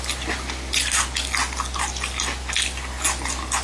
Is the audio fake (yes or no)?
no